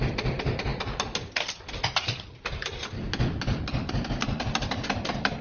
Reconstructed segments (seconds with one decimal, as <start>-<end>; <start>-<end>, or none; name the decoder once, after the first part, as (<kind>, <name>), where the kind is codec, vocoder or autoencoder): none